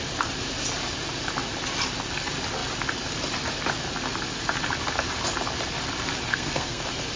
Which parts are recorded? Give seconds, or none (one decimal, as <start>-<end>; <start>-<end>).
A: 0.0-6.3; 6.8-7.2